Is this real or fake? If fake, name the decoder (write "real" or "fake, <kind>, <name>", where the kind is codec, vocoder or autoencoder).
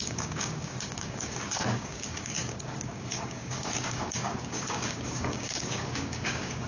fake, codec, DAC